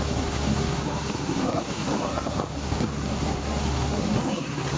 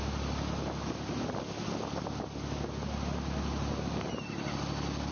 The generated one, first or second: first